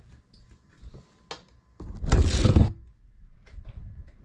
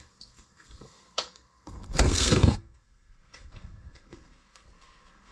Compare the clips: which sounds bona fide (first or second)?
first